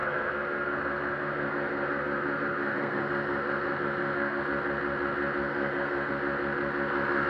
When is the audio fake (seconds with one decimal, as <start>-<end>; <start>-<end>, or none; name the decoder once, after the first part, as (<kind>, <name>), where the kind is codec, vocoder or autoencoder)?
0.0-4.4 (codec, SNAC); 5.5-6.1